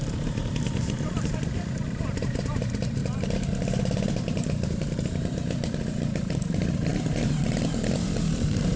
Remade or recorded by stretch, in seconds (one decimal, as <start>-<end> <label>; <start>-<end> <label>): 0.0-3.0 remade; 3.0-3.8 recorded; 3.8-8.8 remade